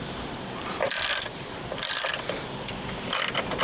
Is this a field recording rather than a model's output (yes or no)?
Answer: no